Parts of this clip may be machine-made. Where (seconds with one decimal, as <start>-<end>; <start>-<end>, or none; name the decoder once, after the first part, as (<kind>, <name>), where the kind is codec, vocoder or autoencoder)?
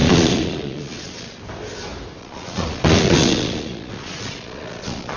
0.0-1.4 (vocoder, Vocos); 2.2-5.2